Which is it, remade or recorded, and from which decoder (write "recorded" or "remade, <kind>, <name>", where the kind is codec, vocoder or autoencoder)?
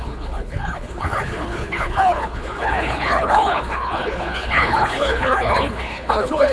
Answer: remade, codec, HILCodec